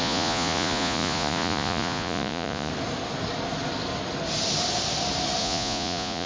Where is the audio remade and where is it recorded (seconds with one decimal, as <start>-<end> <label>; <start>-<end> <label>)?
0.0-2.7 remade; 2.7-5.4 recorded; 5.4-6.3 remade